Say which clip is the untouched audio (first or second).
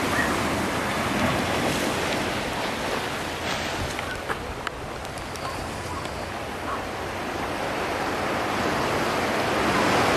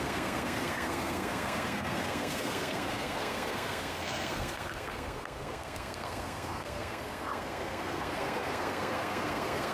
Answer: first